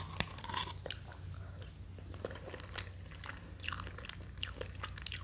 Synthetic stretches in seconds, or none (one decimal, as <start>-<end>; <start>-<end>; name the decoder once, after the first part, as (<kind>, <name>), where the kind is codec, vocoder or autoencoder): none